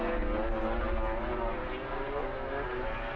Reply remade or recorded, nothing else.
recorded